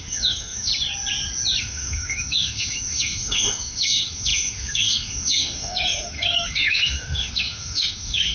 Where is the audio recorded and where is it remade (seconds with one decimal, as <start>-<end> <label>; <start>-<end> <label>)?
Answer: 0.0-0.7 remade; 0.7-1.6 recorded; 1.6-8.3 remade